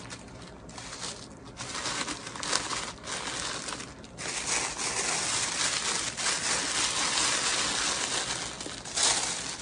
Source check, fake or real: real